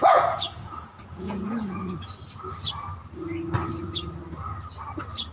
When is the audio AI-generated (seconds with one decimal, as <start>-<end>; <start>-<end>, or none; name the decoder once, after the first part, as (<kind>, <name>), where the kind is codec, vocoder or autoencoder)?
0.0-1.8 (vocoder, Vocos)